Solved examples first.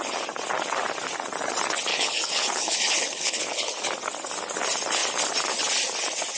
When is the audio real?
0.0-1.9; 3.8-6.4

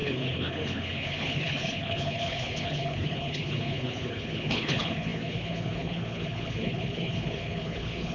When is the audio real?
none

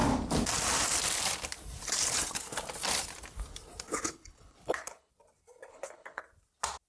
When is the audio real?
0.0-3.9; 5.1-5.7; 6.2-6.9